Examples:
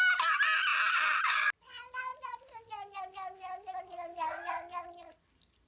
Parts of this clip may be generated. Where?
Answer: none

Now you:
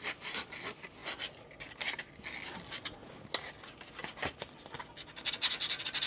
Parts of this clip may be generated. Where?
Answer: none

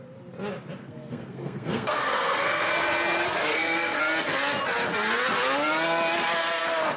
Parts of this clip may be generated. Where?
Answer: 0.8-2.7 (codec, SNAC); 3.4-4.0